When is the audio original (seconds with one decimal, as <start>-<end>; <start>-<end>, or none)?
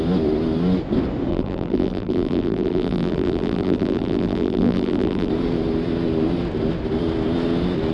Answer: 0.0-1.3; 5.3-7.9